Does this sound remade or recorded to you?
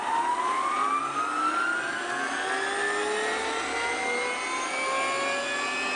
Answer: recorded